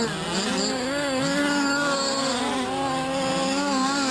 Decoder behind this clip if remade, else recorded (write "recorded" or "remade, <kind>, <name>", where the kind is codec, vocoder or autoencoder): recorded